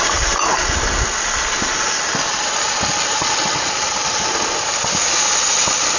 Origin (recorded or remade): recorded